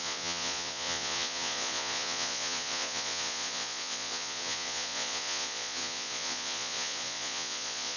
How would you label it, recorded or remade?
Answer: remade